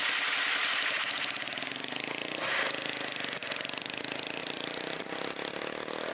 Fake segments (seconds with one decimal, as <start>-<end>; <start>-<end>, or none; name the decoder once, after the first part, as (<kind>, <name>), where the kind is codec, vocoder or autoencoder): 4.4-5.0 (vocoder, BigVGAN v2)